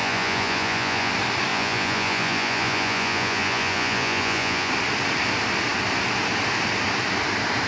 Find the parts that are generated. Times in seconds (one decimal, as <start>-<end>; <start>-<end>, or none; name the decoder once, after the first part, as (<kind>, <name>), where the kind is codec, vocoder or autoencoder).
0.0-1.1 (vocoder, Vocos); 1.5-4.7